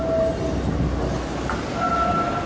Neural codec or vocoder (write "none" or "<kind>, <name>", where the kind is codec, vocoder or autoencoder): none